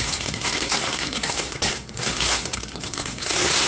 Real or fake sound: fake